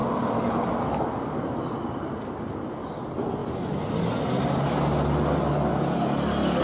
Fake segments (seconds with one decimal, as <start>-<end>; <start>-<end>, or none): none